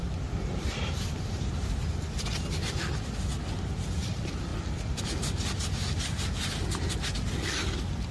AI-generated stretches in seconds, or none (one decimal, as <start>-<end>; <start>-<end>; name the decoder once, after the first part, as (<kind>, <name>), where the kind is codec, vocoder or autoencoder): 0.0-1.7 (vocoder, BigVGAN v2); 4.5-5.0